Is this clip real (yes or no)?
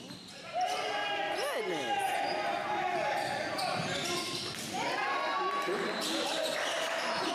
yes